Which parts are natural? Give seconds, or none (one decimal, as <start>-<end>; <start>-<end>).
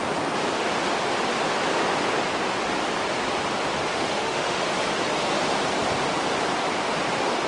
0.0-3.9; 4.7-7.5